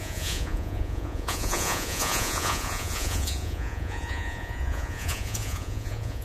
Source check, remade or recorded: remade